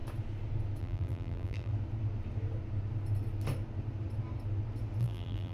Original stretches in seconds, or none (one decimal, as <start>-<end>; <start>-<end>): 0.0-0.8; 1.7-5.0